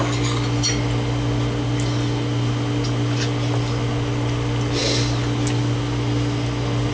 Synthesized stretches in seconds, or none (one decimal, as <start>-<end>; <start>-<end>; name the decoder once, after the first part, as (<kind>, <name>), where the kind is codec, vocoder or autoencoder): none